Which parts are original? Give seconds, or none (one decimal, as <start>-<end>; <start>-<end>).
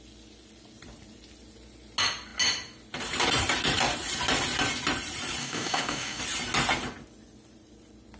0.0-5.4; 6.2-8.2